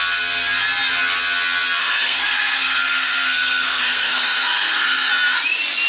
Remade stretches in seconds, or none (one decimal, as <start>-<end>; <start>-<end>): 1.8-5.1